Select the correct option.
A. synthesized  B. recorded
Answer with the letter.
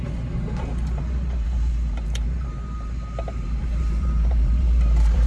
A